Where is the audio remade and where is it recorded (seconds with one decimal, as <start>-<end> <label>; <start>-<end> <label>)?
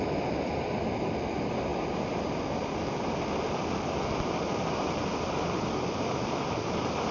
0.0-7.1 recorded